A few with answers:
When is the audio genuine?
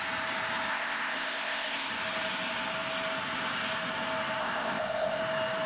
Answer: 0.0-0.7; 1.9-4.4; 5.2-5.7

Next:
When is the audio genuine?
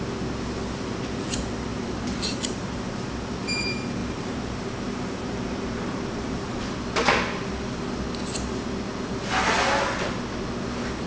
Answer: 0.0-1.7; 3.0-4.0; 6.6-11.1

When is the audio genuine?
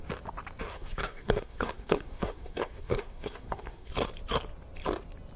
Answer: 0.0-0.7; 3.9-5.4